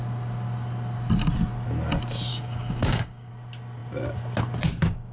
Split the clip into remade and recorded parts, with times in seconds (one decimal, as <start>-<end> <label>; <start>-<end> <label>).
0.0-2.3 recorded; 2.3-3.3 remade; 3.3-5.1 recorded